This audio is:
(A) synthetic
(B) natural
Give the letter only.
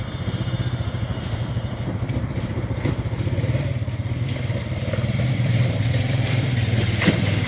A